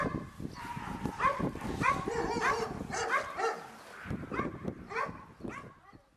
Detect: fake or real real